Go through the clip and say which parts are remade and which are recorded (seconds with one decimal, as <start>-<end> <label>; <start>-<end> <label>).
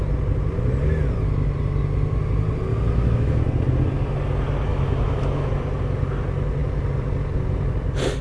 0.0-2.7 recorded; 2.7-3.4 remade; 3.4-4.7 recorded; 4.7-5.5 remade; 5.5-8.2 recorded